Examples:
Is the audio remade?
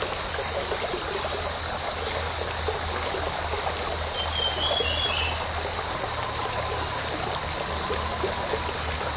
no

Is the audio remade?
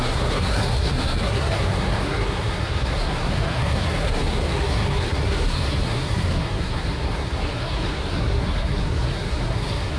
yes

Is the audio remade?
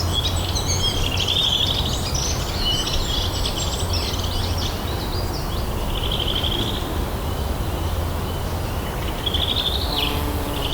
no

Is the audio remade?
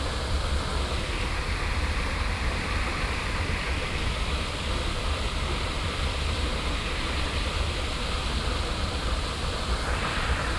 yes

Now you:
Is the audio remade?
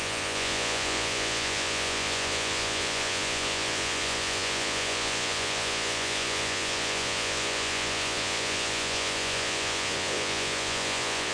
yes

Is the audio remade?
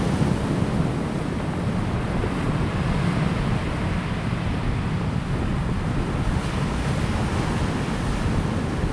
no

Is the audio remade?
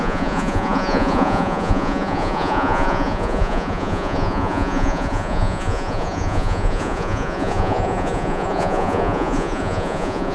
yes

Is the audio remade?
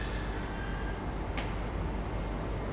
no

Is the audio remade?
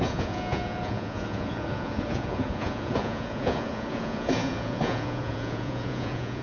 yes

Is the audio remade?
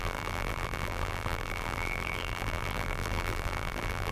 yes